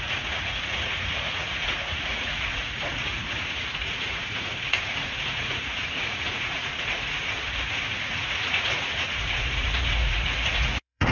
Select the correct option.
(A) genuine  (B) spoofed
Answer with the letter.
B